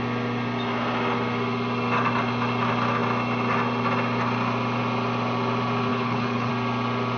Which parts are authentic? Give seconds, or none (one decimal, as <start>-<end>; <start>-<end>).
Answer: 0.0-5.9; 6.5-7.2